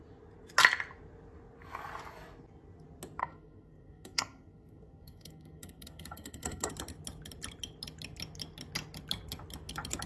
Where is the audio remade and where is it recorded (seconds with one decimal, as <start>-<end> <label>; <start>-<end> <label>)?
0.0-3.2 recorded; 3.2-6.7 remade; 6.7-10.1 recorded